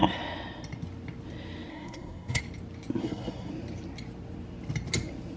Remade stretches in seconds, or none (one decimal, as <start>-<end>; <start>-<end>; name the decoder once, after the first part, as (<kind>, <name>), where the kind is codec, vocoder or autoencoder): 1.7-2.4 (codec, SNAC); 3.0-3.5